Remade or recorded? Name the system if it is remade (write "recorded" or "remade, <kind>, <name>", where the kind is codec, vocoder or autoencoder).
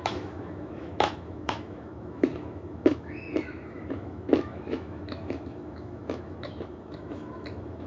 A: remade, autoencoder, DAC-VAE